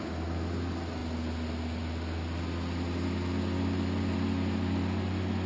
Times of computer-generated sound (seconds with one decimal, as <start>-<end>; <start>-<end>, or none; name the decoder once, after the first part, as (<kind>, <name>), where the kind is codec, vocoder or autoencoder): none